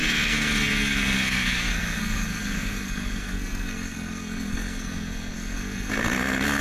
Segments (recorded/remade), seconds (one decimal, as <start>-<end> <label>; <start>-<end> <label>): 0.0-6.6 remade